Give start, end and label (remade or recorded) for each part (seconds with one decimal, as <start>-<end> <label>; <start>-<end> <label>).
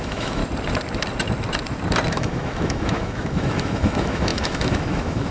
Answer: 0.0-0.4 remade; 0.4-2.1 recorded; 2.1-5.3 remade